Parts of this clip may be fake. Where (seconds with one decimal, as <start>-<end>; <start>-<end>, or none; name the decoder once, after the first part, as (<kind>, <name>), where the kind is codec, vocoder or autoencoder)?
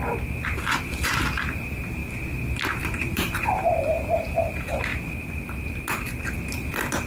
0.0-4.9 (vocoder, BigVGAN v2)